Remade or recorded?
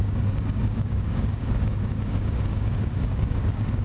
remade